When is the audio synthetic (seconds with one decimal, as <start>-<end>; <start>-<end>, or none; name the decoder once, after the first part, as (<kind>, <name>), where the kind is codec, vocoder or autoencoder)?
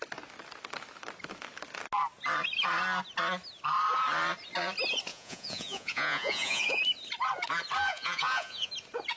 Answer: 5.1-6.8 (vocoder, Vocos); 7.9-8.7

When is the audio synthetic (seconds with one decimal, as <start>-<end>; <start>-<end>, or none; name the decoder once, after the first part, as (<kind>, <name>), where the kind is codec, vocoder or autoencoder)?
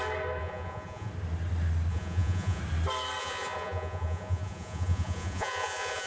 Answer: 0.4-1.1 (vocoder, Vocos); 1.9-2.6; 3.2-6.1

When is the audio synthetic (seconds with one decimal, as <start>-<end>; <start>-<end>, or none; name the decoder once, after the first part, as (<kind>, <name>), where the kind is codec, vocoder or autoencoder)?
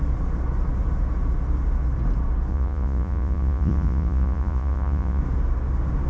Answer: 2.5-5.2 (vocoder, Vocos)